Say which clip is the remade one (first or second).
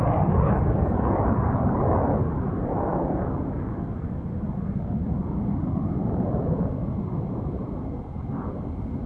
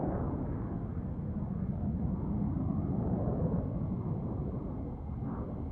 first